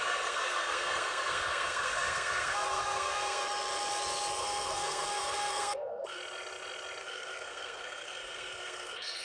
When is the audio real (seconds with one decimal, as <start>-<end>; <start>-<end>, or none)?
3.4-4.4; 6.2-7.0